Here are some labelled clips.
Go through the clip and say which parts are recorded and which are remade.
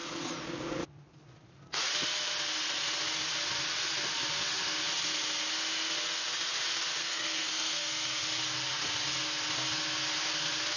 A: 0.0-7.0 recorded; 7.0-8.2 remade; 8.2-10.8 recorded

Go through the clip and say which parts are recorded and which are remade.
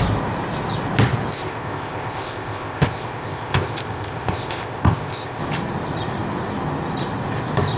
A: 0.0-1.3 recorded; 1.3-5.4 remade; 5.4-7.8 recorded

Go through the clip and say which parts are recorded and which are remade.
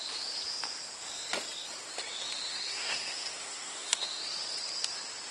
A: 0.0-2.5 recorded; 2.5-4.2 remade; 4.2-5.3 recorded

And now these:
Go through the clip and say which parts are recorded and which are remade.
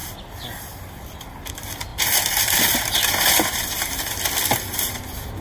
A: 0.0-1.9 recorded; 1.9-4.1 remade; 4.1-5.4 recorded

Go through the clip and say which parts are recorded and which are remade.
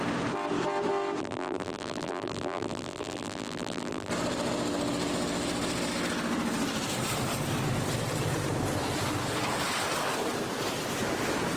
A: 0.0-1.2 recorded; 1.2-4.1 remade; 4.1-11.6 recorded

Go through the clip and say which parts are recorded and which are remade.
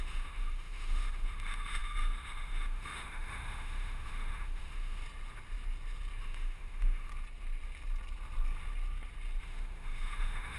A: 0.0-5.0 remade; 5.0-6.2 recorded; 6.2-7.1 remade; 7.1-9.4 recorded; 9.4-10.6 remade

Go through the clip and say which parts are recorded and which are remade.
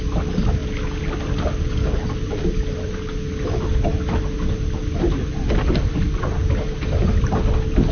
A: 0.0-7.9 recorded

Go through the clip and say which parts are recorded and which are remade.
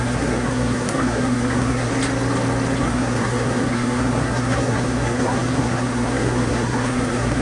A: 0.0-1.9 remade; 1.9-2.8 recorded; 2.8-7.4 remade